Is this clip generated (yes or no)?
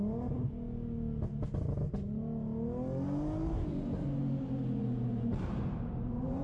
no